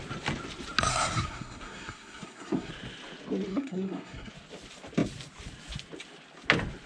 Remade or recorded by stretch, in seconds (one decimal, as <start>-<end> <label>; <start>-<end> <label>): 0.0-0.9 recorded; 0.9-2.7 remade; 2.7-3.5 recorded; 3.5-4.3 remade; 4.3-6.9 recorded